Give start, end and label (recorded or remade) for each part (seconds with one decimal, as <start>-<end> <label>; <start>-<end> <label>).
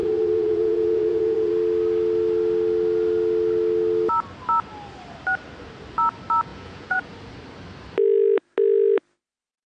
0.0-1.5 remade; 1.5-6.5 recorded; 6.5-7.0 remade; 7.0-9.7 recorded